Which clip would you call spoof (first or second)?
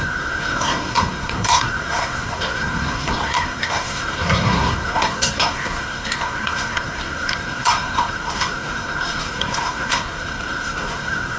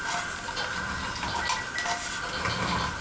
first